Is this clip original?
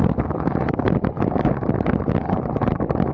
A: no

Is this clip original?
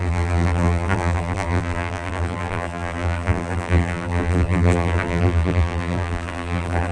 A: no